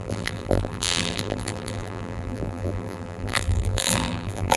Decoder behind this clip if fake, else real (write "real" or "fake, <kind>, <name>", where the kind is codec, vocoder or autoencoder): fake, vocoder, BigVGAN v2